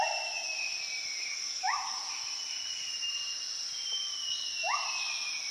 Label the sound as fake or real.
real